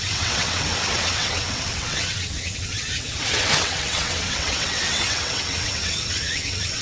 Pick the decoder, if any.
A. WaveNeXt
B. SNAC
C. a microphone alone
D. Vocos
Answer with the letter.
A